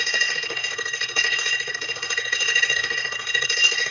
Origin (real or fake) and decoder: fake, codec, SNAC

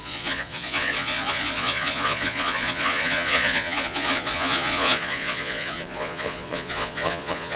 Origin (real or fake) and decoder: fake, vocoder, Vocos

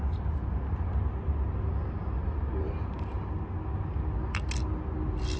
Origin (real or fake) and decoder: real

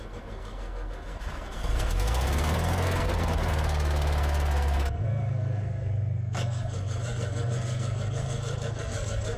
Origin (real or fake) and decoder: fake, codec, SNAC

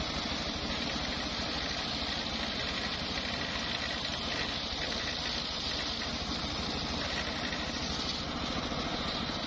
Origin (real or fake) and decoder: real